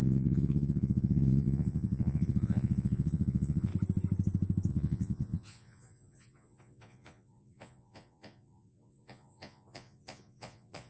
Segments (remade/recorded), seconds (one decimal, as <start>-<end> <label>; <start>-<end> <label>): 0.0-3.7 remade; 3.7-4.7 recorded; 4.7-10.9 remade